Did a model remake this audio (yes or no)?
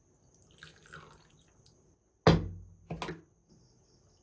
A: no